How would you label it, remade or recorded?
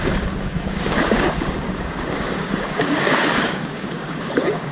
remade